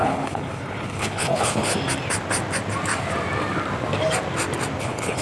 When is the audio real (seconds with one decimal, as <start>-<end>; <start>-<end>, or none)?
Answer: 1.7-4.8